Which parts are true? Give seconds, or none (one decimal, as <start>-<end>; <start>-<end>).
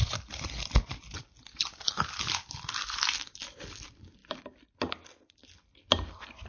0.0-6.5